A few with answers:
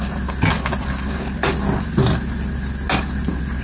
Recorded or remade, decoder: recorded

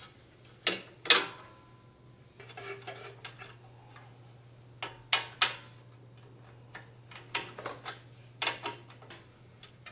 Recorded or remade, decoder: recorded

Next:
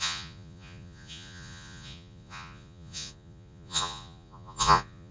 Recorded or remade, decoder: remade, vocoder, Vocos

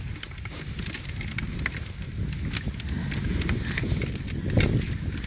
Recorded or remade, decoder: recorded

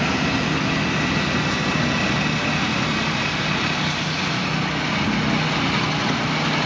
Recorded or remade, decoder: recorded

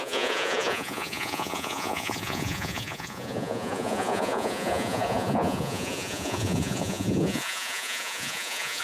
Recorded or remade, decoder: remade, vocoder, Vocos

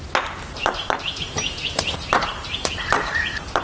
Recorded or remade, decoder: recorded